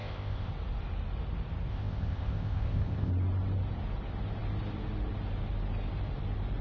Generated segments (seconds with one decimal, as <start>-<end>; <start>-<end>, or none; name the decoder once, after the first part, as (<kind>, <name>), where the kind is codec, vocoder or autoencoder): 0.0-0.5 (codec, ZipCodec); 1.7-3.1